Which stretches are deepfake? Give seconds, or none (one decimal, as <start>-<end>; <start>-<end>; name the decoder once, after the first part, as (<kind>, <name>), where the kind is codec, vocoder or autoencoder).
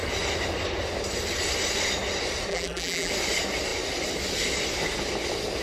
2.5-3.1 (vocoder, BigVGAN v2)